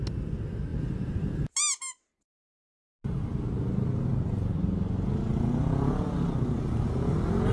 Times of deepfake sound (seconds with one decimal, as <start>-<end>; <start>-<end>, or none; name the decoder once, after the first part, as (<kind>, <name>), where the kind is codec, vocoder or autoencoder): none